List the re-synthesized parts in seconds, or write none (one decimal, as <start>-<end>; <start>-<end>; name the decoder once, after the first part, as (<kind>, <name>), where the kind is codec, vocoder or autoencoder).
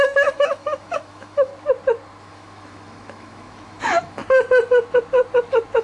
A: 0.0-1.5 (autoencoder, DAC-VAE); 2.2-4.2